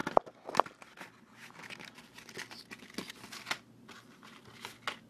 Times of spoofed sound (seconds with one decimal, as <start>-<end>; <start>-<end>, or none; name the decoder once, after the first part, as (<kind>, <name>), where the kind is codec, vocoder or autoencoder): none